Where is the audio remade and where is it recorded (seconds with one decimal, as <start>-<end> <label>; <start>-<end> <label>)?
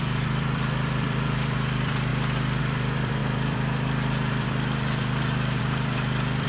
0.0-2.1 remade; 2.1-2.6 recorded; 2.6-6.5 remade